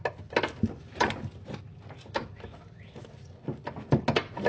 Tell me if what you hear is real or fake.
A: real